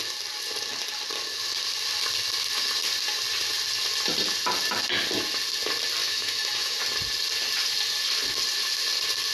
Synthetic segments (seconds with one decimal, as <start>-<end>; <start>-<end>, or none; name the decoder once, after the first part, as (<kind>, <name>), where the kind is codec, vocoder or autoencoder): 6.0-6.8 (autoencoder, DAC-VAE)